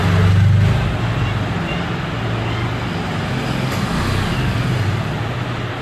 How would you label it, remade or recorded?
recorded